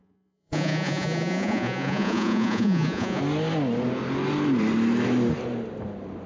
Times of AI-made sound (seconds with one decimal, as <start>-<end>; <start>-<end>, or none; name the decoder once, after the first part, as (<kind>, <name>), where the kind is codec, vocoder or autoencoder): 0.0-3.2 (vocoder, Vocos)